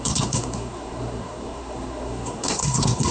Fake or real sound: fake